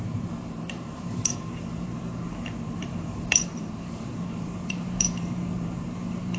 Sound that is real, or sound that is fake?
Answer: fake